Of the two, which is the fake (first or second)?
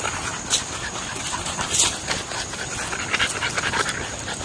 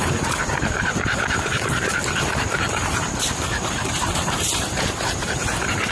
second